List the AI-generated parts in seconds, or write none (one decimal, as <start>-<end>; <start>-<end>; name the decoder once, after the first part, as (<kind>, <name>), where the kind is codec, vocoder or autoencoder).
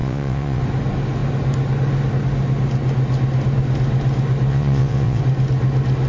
0.0-0.6 (vocoder, WaveNeXt); 4.5-5.2